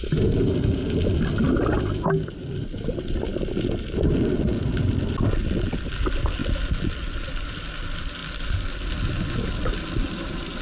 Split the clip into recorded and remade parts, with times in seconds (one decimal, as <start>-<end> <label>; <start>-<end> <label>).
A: 0.0-10.6 recorded